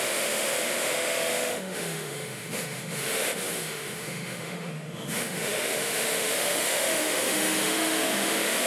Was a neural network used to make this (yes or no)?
yes